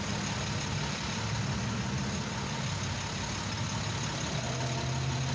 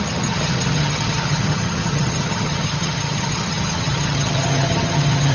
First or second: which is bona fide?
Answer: first